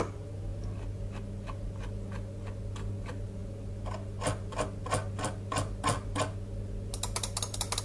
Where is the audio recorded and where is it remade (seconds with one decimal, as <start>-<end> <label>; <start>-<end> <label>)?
0.0-7.8 recorded